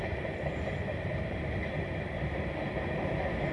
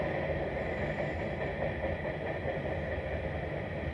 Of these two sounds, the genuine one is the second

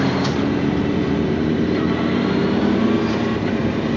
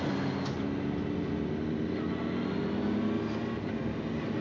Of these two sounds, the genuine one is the second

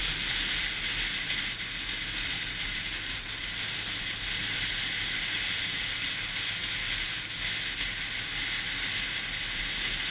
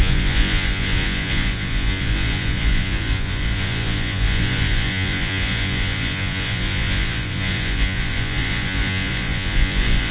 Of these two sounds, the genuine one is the first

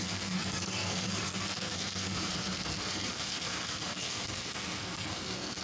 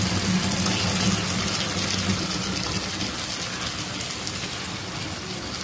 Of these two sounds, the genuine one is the second